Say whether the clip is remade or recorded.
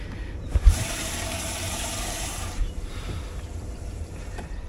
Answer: remade